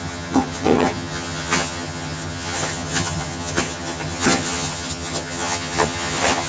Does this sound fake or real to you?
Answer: fake